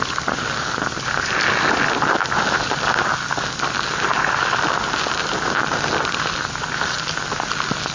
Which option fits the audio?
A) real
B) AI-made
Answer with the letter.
A